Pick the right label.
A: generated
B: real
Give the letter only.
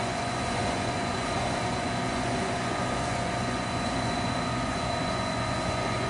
A